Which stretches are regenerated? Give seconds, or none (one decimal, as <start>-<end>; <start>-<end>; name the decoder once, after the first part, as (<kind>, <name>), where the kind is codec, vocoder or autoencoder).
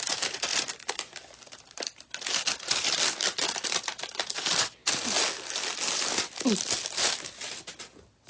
none